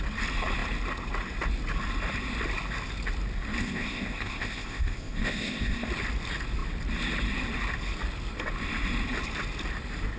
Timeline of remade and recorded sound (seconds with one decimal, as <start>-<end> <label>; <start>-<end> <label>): 0.0-3.6 recorded; 3.6-5.9 remade; 5.9-10.2 recorded